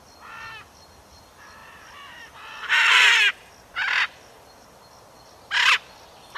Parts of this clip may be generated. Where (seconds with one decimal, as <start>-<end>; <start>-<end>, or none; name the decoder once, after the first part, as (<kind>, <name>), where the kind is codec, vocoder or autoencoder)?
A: 1.6-3.5 (vocoder, BigVGAN v2)